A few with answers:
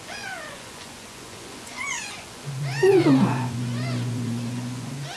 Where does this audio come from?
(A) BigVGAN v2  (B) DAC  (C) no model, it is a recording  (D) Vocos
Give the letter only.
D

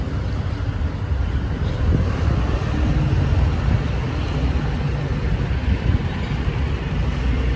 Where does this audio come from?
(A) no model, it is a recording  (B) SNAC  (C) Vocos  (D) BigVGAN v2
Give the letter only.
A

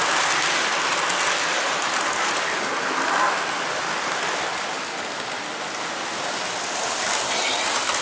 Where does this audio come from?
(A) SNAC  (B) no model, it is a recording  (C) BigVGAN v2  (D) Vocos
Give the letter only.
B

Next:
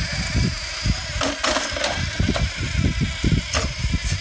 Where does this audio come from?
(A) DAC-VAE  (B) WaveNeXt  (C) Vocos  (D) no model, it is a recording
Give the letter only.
D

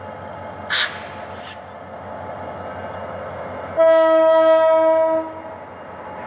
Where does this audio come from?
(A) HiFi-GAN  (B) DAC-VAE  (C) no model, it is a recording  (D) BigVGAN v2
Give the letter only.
C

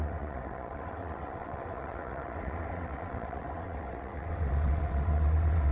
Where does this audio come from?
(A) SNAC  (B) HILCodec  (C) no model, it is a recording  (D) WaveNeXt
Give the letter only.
D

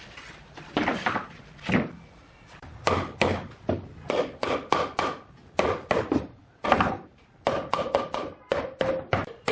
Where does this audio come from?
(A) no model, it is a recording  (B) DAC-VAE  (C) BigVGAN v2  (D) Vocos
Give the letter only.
A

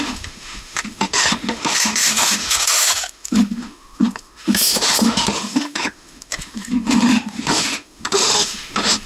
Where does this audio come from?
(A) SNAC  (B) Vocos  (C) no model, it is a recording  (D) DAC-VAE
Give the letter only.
D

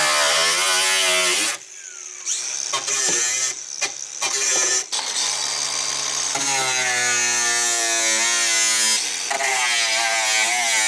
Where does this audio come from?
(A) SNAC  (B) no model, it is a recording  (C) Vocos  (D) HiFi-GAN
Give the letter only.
B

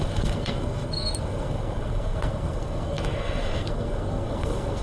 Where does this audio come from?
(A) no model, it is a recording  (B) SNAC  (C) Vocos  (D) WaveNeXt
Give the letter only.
B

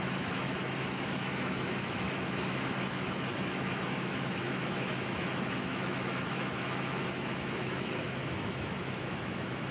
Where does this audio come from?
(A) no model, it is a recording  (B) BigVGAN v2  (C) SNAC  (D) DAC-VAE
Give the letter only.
D